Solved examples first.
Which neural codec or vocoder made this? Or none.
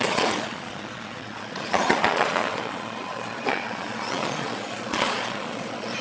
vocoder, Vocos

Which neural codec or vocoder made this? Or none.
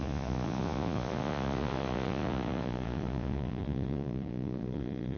vocoder, Vocos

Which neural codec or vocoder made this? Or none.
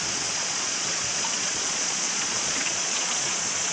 vocoder, Vocos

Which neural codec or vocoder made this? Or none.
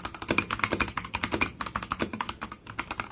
none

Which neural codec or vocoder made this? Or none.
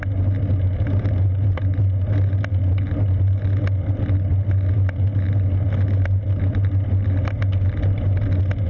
none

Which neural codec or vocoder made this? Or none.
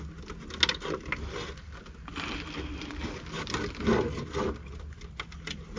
none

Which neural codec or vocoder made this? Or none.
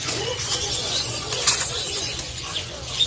vocoder, Vocos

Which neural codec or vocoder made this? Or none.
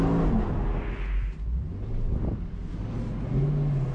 none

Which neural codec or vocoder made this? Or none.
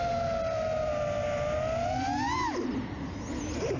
none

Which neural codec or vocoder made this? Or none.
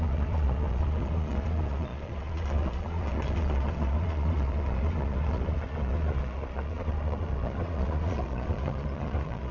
vocoder, Vocos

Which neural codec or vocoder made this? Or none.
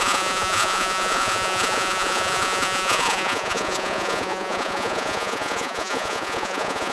vocoder, Vocos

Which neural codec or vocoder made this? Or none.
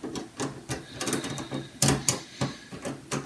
none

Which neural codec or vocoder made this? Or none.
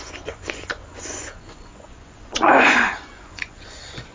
vocoder, Vocos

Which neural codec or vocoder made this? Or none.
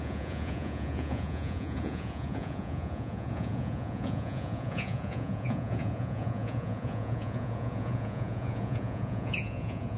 vocoder, Vocos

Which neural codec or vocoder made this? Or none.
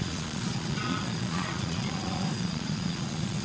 vocoder, Vocos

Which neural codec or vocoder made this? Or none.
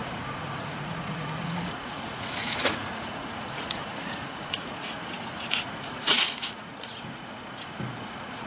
vocoder, Vocos